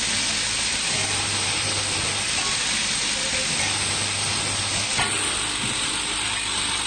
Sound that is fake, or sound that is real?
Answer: real